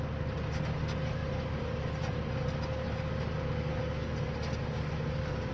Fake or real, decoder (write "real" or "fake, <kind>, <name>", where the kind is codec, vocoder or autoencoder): real